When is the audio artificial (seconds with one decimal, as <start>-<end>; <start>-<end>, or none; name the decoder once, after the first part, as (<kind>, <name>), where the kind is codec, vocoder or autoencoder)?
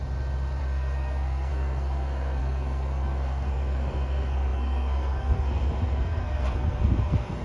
0.6-7.4 (codec, SNAC)